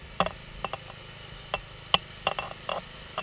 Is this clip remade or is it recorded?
recorded